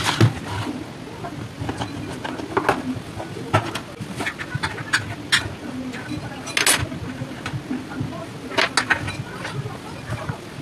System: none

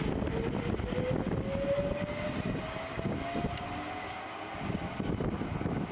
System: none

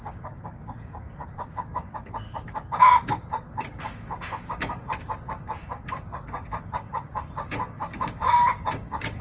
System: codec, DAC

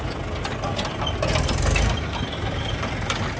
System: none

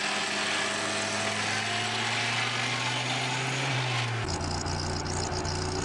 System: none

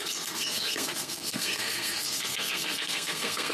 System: codec, SNAC